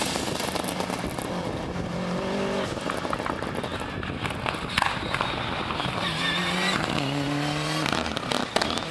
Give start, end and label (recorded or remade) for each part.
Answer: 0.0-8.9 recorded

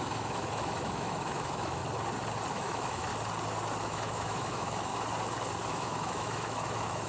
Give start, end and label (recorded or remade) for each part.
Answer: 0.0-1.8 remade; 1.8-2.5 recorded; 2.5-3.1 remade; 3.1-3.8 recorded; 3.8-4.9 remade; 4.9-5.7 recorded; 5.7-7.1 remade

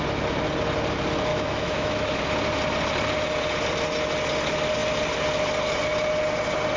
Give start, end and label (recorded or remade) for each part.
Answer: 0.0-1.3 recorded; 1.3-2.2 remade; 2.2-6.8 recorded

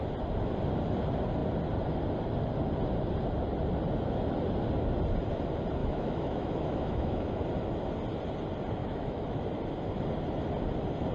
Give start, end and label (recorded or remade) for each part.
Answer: 0.0-5.8 recorded; 5.8-7.4 remade; 7.4-8.8 recorded; 8.8-9.4 remade; 9.4-11.1 recorded

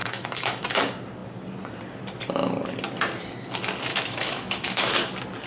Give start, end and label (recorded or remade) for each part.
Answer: 0.0-0.6 remade; 0.6-3.9 recorded; 3.9-4.9 remade; 4.9-5.5 recorded